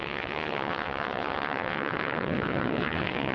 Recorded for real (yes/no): no